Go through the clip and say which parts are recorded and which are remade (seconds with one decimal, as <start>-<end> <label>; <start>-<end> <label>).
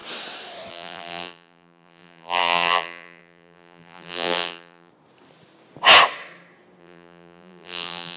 0.0-0.7 recorded; 0.7-4.9 remade; 4.9-6.8 recorded; 6.8-8.2 remade